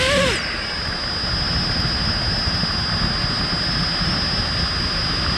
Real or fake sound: real